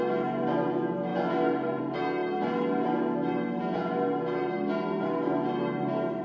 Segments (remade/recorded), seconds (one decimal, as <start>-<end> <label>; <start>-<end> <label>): 0.0-6.2 recorded